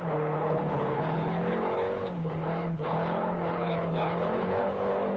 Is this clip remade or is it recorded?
remade